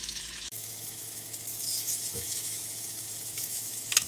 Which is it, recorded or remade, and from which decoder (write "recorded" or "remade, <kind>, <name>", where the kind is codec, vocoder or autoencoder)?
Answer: remade, autoencoder, DAC-VAE